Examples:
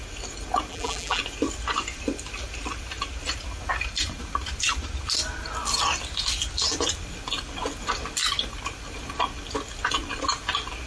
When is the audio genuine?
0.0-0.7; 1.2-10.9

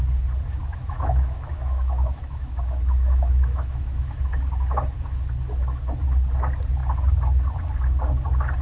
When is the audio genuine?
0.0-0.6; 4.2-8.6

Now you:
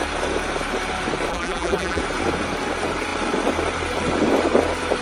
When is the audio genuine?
0.0-1.3; 2.0-5.0

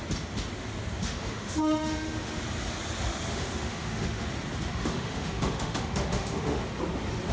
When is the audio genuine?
0.0-1.0; 2.4-3.3; 4.3-4.7; 6.6-7.3

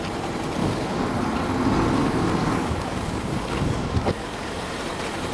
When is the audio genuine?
0.0-0.6; 1.1-2.0; 4.6-5.3